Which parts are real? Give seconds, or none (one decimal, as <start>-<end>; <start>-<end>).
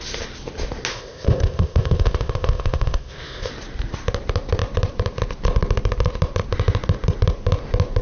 0.0-0.9; 3.5-8.0